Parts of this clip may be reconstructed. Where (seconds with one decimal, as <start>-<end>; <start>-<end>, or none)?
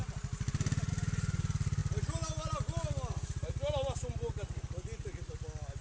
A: none